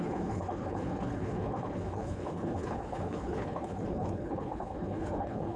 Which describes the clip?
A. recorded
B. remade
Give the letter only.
B